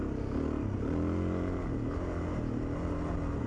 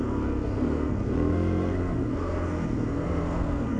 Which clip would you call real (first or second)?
first